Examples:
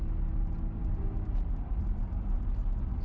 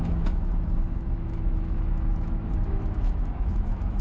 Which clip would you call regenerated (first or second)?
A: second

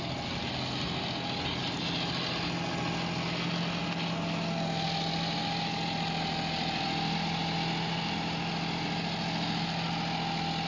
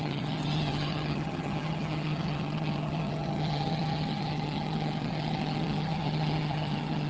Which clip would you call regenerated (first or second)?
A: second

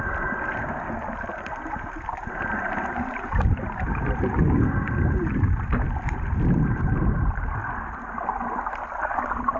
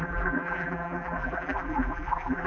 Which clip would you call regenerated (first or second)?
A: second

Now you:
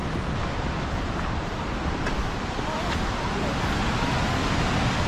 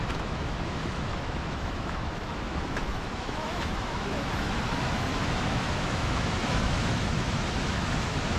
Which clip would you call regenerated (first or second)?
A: second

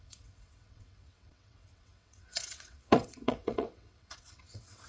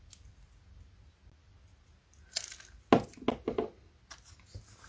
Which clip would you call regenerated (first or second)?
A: first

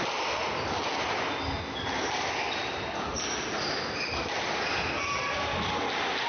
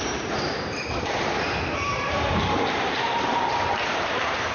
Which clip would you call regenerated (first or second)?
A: second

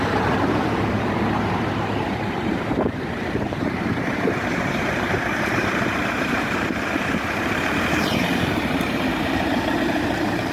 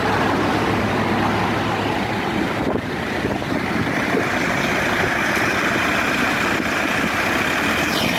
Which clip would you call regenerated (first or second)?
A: first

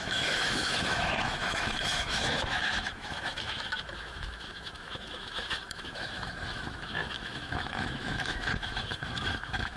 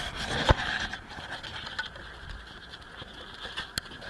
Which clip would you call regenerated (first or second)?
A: first